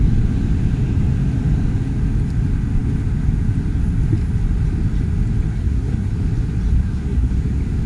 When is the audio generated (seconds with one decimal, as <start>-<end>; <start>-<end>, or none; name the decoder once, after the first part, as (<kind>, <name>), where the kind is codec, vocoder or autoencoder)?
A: 5.5-6.1 (codec, SNAC); 6.7-7.3